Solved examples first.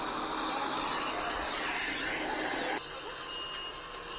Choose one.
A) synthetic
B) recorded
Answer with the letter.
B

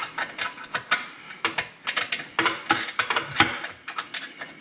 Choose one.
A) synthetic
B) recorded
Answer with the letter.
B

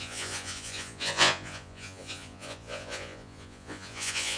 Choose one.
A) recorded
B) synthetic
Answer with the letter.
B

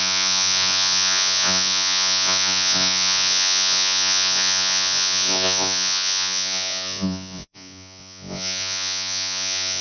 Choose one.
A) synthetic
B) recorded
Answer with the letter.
A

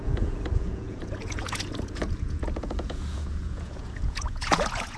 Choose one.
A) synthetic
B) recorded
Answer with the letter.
A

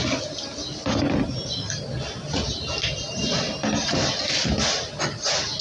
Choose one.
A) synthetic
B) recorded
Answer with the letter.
B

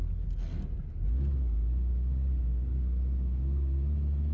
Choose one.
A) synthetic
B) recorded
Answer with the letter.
B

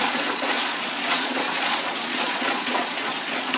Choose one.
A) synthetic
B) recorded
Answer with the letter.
A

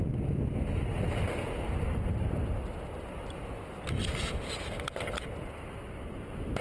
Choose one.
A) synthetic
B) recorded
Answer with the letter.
B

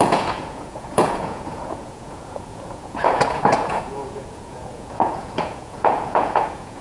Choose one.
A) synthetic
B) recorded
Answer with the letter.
A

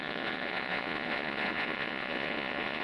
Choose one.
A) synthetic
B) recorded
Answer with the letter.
A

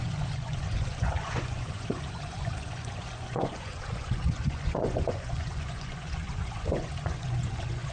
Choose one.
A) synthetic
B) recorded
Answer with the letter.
A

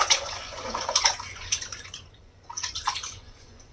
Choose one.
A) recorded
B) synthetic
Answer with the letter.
B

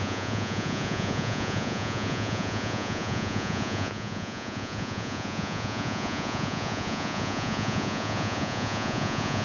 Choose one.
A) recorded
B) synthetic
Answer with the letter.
B